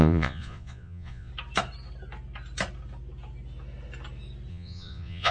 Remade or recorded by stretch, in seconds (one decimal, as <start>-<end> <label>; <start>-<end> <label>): 0.0-1.3 remade; 1.3-4.5 recorded; 4.5-5.3 remade